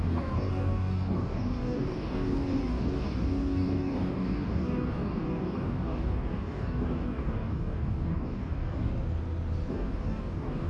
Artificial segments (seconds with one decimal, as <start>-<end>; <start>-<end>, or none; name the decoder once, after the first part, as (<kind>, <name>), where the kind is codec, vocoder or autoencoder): 0.0-8.9 (codec, DAC); 9.7-10.7